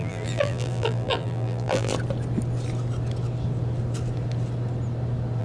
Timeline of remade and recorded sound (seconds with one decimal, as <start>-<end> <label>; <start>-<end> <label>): 0.0-1.9 remade; 1.9-5.4 recorded